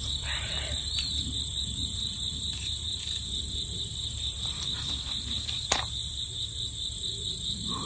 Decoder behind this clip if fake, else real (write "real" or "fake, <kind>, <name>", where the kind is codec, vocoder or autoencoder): fake, vocoder, BigVGAN v2